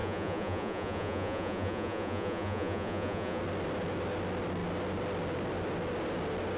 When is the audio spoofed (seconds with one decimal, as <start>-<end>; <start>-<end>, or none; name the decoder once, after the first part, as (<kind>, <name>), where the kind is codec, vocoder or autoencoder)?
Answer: 0.0-3.4 (vocoder, Vocos)